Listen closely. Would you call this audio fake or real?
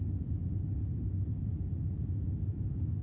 real